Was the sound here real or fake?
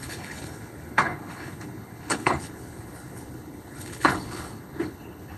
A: fake